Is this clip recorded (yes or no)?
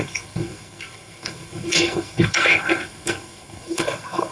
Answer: no